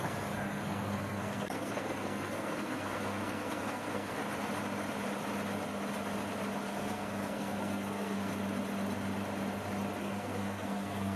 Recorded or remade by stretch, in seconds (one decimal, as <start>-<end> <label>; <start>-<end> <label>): 0.0-4.2 remade; 4.2-6.7 recorded; 6.7-8.3 remade; 8.3-10.0 recorded; 10.0-11.2 remade